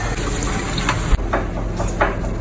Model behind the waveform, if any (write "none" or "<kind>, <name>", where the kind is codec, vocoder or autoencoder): none